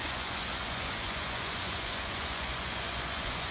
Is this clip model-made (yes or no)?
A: yes